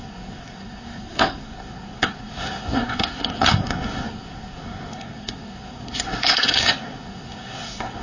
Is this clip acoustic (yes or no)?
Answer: no